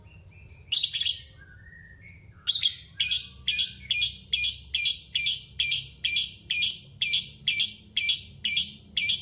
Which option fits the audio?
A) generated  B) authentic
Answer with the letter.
B